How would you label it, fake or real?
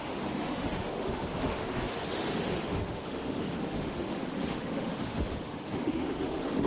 fake